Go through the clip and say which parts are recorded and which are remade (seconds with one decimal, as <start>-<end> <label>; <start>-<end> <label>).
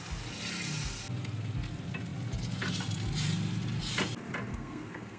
0.0-4.5 recorded; 4.5-5.2 remade